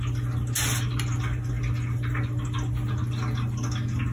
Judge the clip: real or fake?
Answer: real